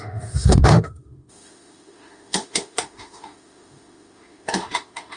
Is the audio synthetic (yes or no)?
yes